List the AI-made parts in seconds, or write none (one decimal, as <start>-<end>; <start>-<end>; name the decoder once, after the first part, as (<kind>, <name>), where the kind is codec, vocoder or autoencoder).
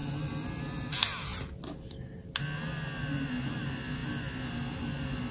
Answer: none